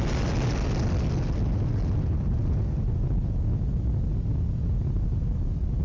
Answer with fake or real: real